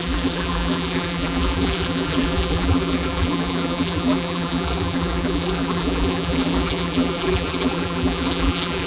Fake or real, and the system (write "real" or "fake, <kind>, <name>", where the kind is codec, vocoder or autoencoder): fake, vocoder, BigVGAN v2